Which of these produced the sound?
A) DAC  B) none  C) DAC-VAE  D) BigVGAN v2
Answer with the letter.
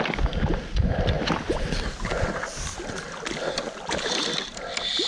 B